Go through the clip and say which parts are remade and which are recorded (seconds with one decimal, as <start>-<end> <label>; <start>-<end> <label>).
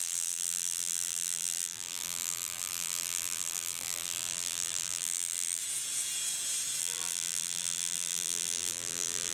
0.0-5.6 remade; 5.6-6.8 recorded; 6.8-9.3 remade